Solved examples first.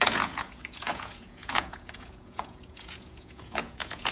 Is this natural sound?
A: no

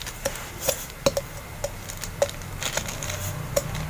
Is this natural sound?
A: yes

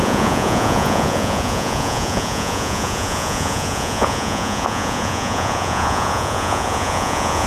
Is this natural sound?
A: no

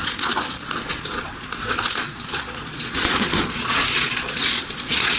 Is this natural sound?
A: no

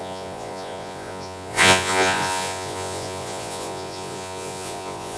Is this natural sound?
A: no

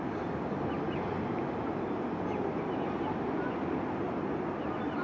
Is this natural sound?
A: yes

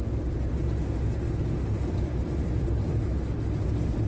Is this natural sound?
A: yes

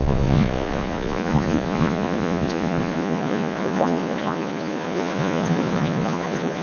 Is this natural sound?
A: no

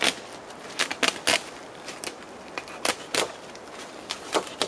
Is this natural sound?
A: yes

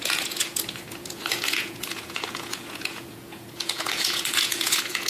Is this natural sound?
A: no